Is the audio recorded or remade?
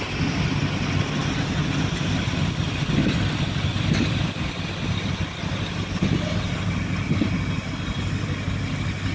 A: recorded